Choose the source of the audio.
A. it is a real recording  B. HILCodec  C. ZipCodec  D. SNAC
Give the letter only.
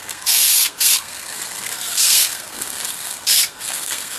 D